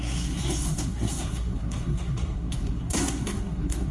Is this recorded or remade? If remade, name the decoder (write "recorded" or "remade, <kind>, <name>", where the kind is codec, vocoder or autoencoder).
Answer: remade, codec, SNAC